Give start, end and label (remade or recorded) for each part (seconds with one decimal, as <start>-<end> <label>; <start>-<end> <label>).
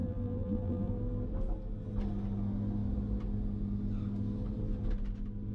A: 0.0-0.9 remade; 0.9-5.5 recorded